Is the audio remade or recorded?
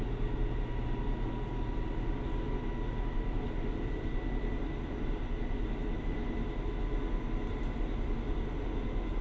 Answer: recorded